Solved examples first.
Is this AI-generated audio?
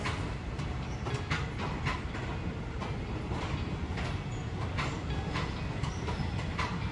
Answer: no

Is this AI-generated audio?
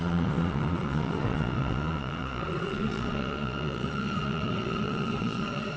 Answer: yes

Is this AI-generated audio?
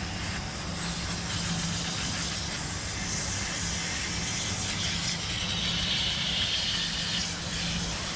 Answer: no